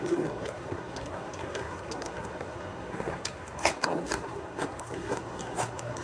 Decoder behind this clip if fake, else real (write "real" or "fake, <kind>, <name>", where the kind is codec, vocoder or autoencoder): fake, codec, SNAC